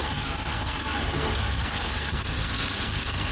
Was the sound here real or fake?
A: fake